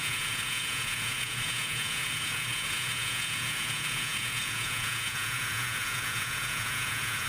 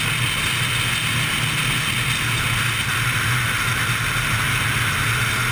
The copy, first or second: first